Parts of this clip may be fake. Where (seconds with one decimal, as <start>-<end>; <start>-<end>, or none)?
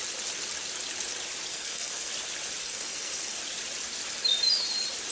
1.5-2.1; 2.6-3.4